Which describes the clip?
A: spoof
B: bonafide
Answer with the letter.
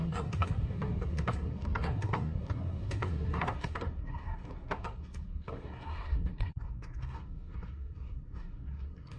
A